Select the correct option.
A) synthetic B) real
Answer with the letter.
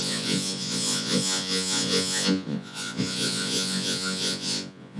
A